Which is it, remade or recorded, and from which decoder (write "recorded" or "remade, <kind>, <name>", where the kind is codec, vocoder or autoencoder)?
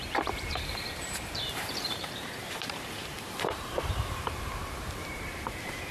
remade, vocoder, BigVGAN v2